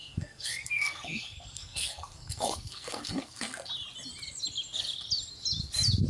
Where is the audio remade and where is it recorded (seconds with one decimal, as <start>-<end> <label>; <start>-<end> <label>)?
0.0-3.7 remade; 3.7-6.1 recorded